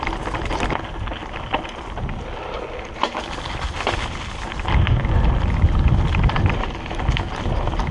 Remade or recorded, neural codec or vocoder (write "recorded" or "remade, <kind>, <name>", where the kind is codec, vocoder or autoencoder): recorded